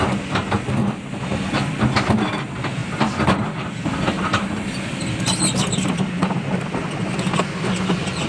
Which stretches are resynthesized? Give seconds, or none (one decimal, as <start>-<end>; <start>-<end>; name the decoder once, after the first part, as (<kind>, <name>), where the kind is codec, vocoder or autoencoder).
2.8-7.7 (vocoder, BigVGAN v2)